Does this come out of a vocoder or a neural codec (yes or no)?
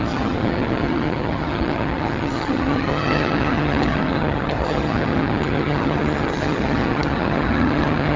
yes